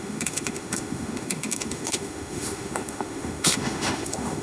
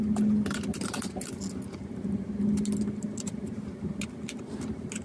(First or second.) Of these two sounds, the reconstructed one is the first